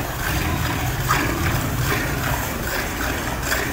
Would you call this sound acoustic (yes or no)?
yes